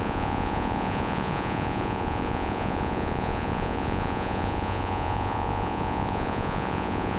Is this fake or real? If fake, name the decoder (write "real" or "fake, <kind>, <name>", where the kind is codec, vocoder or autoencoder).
fake, vocoder, Vocos